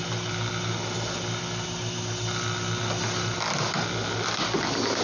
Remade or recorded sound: recorded